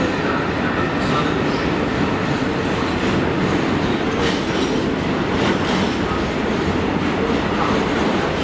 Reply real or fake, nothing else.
real